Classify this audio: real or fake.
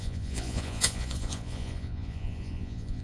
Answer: fake